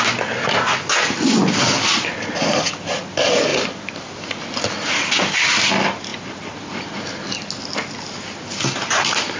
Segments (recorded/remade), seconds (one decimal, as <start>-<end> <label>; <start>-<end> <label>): 0.0-3.5 recorded; 3.5-4.3 remade; 4.3-9.4 recorded